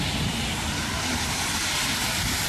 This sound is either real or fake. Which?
real